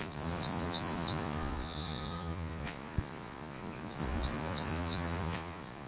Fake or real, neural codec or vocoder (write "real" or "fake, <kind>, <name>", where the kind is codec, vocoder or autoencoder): fake, vocoder, Vocos